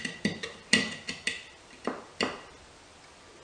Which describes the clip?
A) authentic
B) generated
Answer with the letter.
A